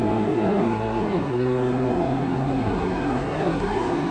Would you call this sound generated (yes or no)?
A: yes